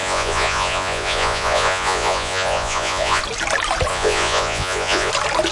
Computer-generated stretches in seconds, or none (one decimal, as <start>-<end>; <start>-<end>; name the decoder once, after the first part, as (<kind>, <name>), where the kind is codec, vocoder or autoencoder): 0.0-3.2 (vocoder, Vocos); 3.9-5.1